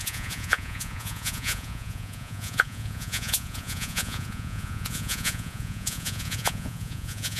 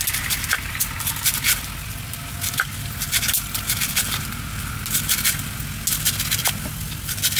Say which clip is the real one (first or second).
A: second